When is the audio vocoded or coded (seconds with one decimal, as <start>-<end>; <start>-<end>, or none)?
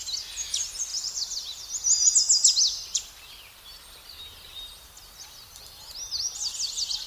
0.9-1.6